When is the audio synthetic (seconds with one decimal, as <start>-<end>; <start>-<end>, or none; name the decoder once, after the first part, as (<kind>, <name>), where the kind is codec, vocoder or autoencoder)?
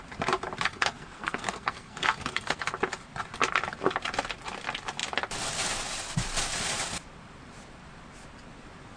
0.7-2.7 (codec, SNAC)